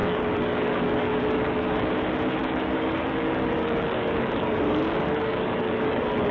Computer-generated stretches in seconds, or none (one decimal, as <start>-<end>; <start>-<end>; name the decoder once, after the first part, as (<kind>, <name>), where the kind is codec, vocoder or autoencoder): 0.0-1.9 (codec, DAC); 2.4-6.3